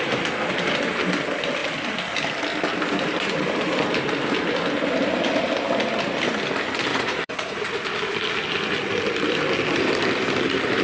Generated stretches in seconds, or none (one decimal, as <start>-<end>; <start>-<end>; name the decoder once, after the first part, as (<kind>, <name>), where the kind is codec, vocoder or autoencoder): 6.9-7.6 (vocoder, Vocos)